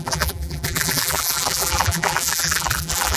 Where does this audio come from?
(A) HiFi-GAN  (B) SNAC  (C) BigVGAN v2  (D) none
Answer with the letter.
C